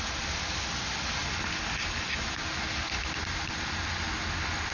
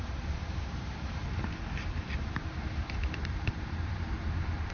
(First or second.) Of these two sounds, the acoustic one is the first